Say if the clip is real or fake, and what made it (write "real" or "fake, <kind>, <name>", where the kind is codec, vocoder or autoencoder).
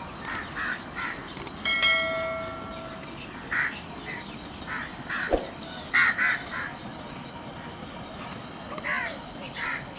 real